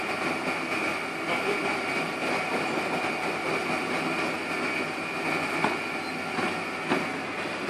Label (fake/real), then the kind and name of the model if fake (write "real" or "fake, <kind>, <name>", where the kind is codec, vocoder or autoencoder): real